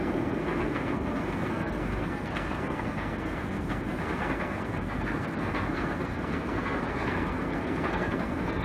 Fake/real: fake